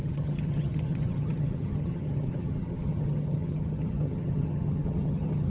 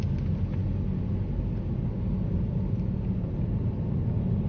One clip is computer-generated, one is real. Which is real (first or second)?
second